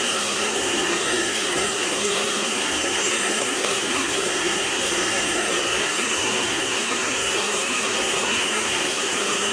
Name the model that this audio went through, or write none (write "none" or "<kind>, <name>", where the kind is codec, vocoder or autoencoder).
codec, SNAC